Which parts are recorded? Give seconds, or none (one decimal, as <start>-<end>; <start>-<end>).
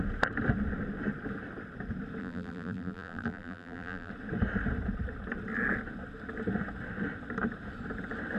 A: 0.0-2.2; 4.1-8.4